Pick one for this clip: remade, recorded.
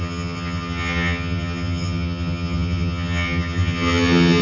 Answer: remade